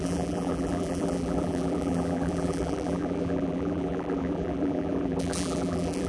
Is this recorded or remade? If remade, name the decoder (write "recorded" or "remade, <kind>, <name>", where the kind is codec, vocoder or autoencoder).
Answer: remade, vocoder, BigVGAN v2